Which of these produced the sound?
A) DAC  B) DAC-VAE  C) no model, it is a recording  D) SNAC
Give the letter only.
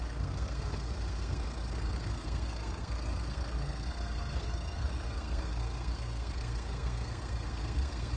D